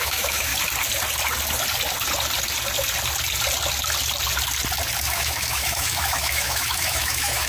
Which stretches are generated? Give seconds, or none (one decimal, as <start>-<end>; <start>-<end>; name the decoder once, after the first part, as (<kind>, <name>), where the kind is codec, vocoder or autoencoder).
0.0-0.5 (autoencoder, DAC-VAE); 5.0-7.5